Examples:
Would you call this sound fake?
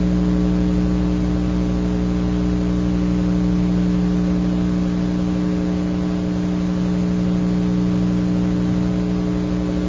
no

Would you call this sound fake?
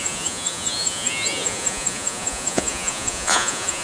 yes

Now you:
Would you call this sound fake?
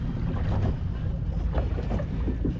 no